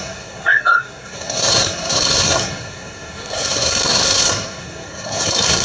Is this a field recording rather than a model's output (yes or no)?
no